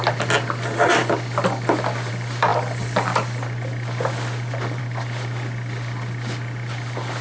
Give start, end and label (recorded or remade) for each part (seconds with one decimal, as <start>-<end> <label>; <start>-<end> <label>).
0.0-7.2 recorded

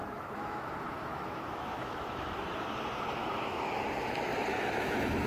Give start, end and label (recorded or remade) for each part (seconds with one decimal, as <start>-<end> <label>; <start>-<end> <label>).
0.0-2.5 remade; 2.5-3.2 recorded; 3.2-3.7 remade; 3.7-4.5 recorded; 4.5-5.3 remade

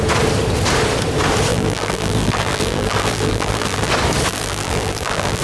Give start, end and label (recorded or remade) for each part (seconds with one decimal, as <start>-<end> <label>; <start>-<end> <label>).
0.0-1.5 recorded; 1.5-3.9 remade; 3.9-4.3 recorded; 4.3-5.4 remade

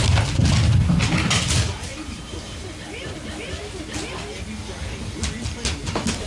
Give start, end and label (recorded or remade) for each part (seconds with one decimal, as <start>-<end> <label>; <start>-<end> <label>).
0.0-1.9 recorded; 1.9-2.6 remade; 2.6-6.3 recorded

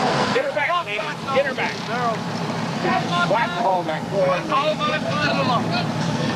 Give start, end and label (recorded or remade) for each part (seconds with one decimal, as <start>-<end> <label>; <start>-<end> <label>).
0.0-1.1 remade; 1.1-2.7 recorded; 2.7-5.3 remade; 5.3-6.0 recorded; 6.0-6.4 remade

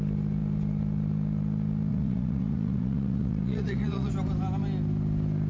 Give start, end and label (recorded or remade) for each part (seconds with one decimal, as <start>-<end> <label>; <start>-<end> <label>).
0.0-1.9 recorded; 1.9-4.1 remade; 4.1-5.5 recorded

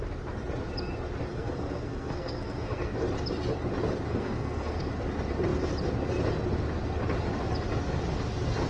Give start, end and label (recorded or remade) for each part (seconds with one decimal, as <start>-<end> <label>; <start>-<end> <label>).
0.0-1.3 recorded; 1.3-3.0 remade; 3.0-4.1 recorded; 4.1-4.8 remade; 4.8-8.7 recorded

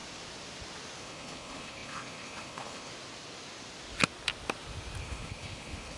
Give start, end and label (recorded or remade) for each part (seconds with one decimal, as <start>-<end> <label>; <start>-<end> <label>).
0.0-1.0 recorded; 1.0-2.9 remade; 2.9-5.0 recorded; 5.0-6.0 remade